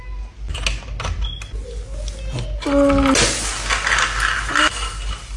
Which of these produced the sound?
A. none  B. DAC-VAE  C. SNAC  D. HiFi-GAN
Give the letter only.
A